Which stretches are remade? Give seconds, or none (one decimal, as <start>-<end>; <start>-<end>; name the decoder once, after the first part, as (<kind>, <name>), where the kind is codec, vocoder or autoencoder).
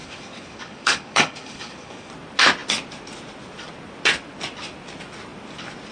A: 0.0-2.1 (codec, DAC)